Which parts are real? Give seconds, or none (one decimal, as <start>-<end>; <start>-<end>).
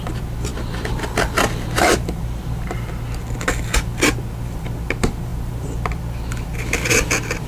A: 0.5-1.9